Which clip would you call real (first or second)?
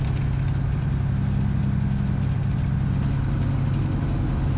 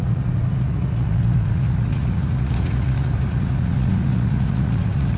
first